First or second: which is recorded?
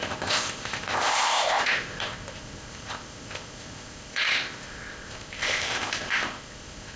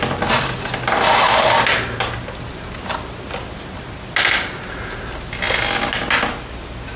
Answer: second